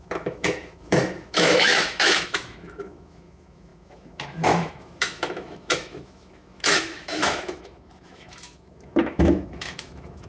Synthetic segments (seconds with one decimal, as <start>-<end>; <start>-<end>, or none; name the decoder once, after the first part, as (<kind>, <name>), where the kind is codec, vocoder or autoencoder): 0.0-10.3 (autoencoder, DAC-VAE)